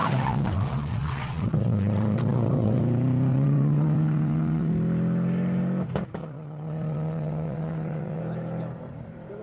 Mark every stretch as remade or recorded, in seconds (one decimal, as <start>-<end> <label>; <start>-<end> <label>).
0.0-2.8 remade; 2.8-3.3 recorded; 3.3-4.7 remade; 4.7-6.2 recorded; 6.2-8.2 remade; 8.2-9.4 recorded